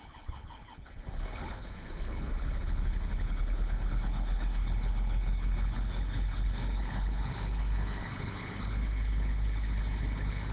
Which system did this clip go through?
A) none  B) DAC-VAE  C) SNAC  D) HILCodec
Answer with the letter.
D